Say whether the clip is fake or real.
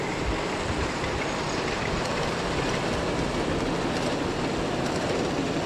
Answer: real